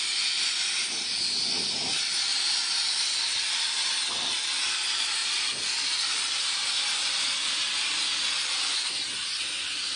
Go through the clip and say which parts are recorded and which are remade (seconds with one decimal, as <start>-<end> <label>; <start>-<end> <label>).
0.0-2.3 recorded; 2.3-2.9 remade; 2.9-10.0 recorded